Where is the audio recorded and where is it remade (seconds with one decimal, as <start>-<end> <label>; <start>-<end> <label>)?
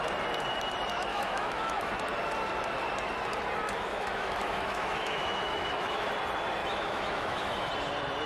0.0-1.1 recorded; 1.1-1.9 remade; 1.9-3.9 recorded; 3.9-6.1 remade; 6.1-6.6 recorded; 6.6-7.7 remade; 7.7-8.3 recorded